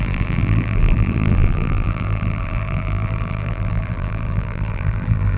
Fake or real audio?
fake